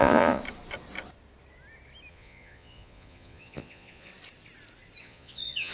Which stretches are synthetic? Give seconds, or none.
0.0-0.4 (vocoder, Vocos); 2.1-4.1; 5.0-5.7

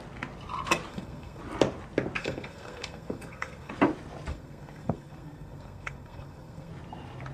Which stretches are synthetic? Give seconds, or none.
0.9-1.4 (codec, SNAC); 2.2-3.7; 4.3-6.7